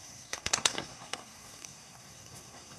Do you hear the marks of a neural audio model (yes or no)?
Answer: yes